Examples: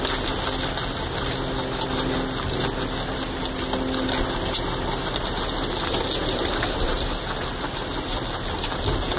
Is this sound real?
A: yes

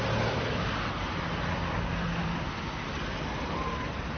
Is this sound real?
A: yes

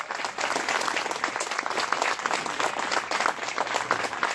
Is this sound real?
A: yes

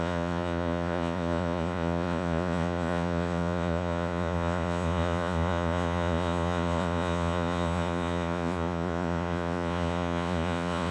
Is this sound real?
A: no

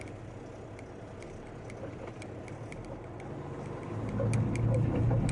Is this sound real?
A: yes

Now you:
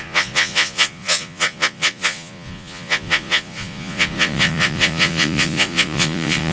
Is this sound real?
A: no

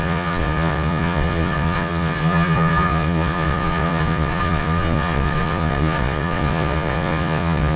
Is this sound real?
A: no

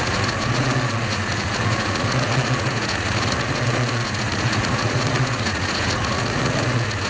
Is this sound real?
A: no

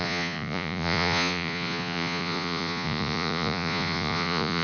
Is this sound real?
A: no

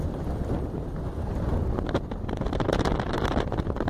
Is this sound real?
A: yes